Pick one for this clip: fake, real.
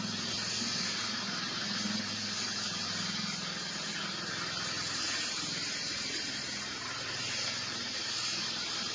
fake